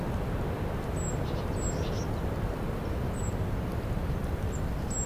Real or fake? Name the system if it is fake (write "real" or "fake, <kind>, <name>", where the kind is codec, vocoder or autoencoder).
real